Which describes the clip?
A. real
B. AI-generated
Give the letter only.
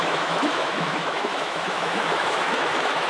B